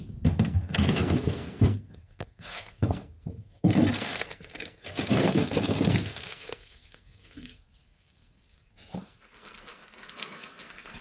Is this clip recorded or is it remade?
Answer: remade